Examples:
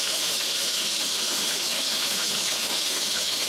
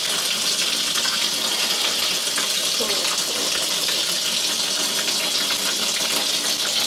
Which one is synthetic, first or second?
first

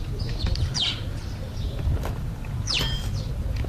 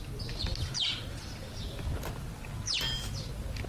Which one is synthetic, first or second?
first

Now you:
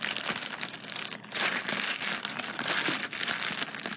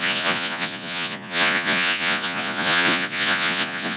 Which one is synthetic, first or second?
second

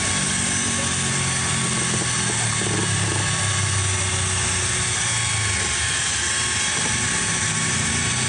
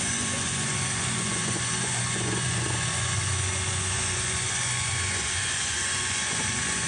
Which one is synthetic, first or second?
second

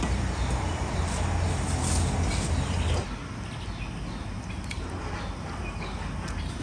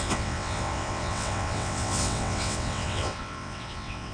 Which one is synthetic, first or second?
second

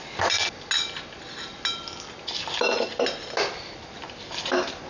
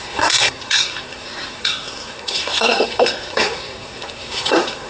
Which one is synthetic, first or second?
second